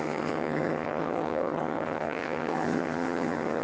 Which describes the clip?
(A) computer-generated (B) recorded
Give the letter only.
A